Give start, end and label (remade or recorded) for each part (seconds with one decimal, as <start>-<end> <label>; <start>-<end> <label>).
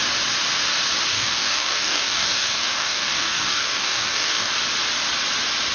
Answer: 0.0-1.1 recorded; 1.1-4.5 remade; 4.5-5.7 recorded